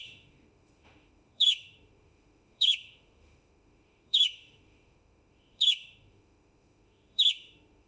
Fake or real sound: fake